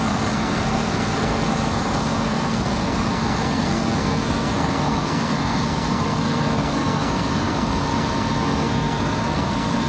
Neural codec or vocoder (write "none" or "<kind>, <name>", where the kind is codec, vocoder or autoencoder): codec, SNAC